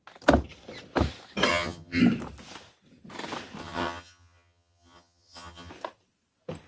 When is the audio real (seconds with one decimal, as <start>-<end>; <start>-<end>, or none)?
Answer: 0.0-1.5; 2.0-3.6; 5.7-6.7